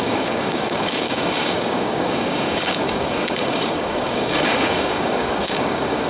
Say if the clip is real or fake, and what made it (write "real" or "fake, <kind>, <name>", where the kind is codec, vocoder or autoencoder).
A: fake, codec, DAC